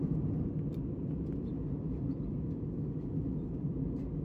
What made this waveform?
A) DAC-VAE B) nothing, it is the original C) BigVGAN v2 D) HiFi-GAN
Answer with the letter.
C